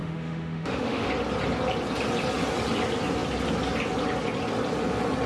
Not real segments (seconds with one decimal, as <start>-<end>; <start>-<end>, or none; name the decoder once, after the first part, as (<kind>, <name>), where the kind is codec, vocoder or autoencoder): 0.0-1.1 (autoencoder, DAC-VAE)